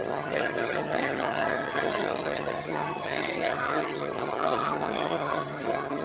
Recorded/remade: remade